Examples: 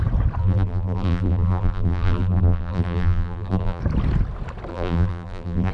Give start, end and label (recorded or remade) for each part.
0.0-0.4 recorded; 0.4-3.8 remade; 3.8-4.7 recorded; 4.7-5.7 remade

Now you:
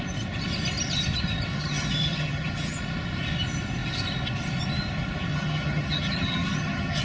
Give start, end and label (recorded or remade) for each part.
0.0-1.5 recorded; 1.5-2.8 remade; 2.8-5.3 recorded; 5.3-7.0 remade

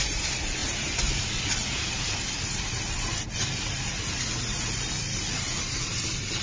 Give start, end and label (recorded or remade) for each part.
0.0-6.4 recorded

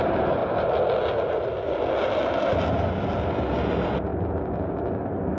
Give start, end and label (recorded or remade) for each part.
0.0-0.4 remade; 0.4-3.6 recorded; 3.6-4.1 remade; 4.1-5.4 recorded

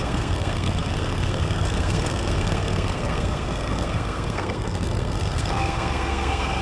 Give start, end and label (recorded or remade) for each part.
0.0-6.6 remade